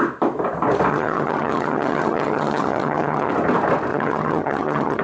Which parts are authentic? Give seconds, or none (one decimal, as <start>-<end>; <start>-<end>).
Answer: 0.0-0.9; 3.3-3.9